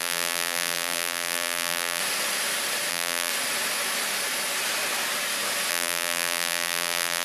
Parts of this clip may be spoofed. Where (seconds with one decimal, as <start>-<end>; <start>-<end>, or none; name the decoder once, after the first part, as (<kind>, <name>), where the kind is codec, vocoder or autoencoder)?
0.0-2.0 (vocoder, BigVGAN v2); 2.9-3.3; 5.7-7.2